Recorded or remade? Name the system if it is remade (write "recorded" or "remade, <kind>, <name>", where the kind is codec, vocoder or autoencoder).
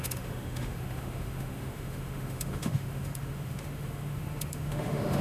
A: remade, autoencoder, DAC-VAE